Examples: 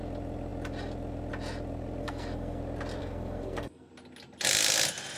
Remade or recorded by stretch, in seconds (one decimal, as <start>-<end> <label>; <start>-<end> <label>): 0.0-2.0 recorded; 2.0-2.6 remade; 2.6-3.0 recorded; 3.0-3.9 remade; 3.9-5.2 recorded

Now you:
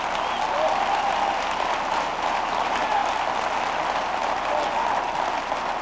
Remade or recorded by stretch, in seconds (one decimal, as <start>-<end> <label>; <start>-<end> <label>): 0.0-5.8 recorded

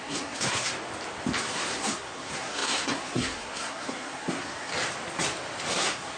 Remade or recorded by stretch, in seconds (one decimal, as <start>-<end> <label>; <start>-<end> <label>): 0.0-0.7 remade; 0.7-1.4 recorded; 1.4-4.7 remade; 4.7-5.7 recorded; 5.7-6.2 remade